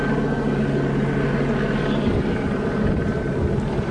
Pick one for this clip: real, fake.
real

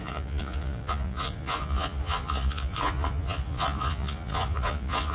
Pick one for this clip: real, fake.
fake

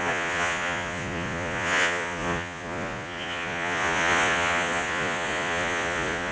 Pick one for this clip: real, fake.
fake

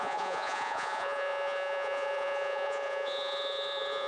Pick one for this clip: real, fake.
fake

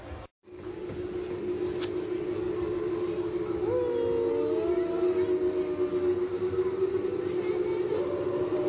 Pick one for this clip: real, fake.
real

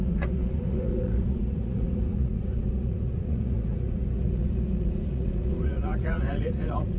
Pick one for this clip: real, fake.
fake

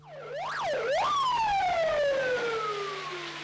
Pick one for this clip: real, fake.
real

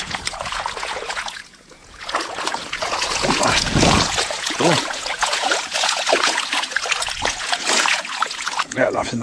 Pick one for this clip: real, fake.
fake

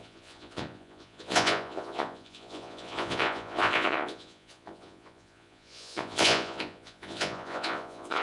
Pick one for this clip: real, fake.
fake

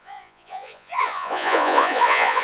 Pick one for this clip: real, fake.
fake